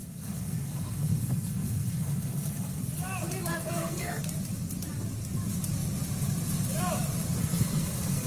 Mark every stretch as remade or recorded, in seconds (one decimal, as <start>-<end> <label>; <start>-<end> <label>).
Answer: 0.0-2.8 remade; 2.8-3.5 recorded; 3.5-4.2 remade; 4.2-7.4 recorded; 7.4-8.3 remade